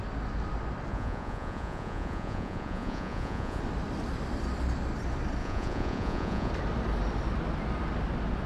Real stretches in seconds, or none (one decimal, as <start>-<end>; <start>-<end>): 0.0-0.9; 3.6-5.4; 6.5-8.5